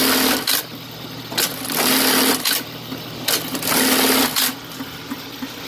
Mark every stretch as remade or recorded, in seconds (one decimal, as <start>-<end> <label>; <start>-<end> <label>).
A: 0.0-5.7 recorded